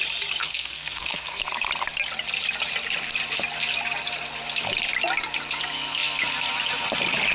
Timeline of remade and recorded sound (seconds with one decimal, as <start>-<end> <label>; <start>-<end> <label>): 0.0-0.4 recorded; 0.4-1.4 remade; 1.4-7.3 recorded